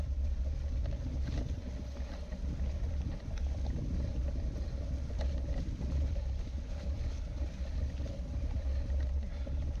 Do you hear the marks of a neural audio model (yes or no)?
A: no